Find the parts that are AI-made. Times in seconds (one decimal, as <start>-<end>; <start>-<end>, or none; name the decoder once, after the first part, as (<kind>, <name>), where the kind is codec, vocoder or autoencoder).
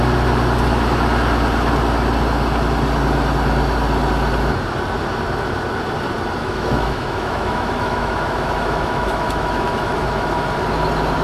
6.4-10.4 (autoencoder, DAC-VAE)